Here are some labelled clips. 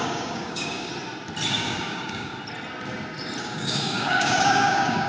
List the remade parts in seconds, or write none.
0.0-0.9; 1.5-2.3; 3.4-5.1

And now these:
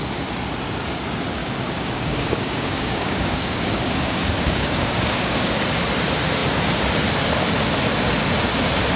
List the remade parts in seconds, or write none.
1.4-5.5

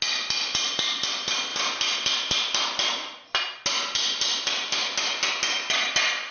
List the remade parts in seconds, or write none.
none

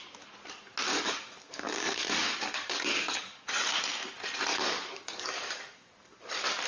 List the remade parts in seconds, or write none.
0.9-3.4; 4.5-6.3